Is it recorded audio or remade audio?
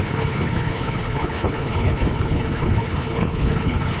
remade